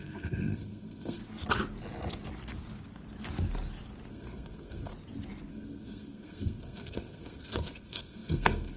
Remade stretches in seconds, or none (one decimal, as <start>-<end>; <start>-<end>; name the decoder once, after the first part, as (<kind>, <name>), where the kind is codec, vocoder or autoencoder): 0.0-1.2 (codec, SNAC); 4.1-4.9; 5.5-8.8